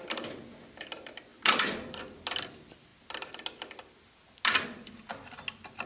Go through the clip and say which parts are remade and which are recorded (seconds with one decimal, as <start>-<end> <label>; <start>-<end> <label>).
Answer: 0.0-5.9 recorded